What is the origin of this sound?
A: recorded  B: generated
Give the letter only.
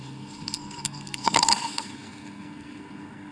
B